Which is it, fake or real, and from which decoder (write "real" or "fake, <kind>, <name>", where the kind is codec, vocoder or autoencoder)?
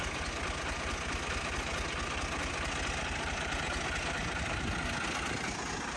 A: real